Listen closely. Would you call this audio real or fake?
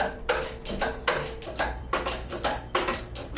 fake